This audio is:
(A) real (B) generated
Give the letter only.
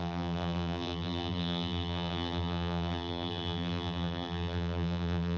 B